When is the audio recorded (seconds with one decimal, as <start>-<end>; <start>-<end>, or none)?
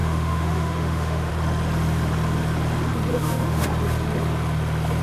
1.3-3.1; 3.7-5.0